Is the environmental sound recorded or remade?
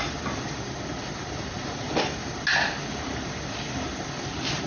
recorded